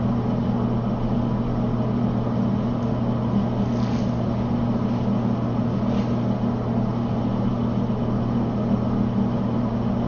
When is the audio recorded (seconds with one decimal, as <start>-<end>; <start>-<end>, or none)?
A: 0.0-10.1